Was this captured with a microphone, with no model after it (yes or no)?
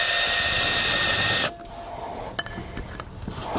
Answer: yes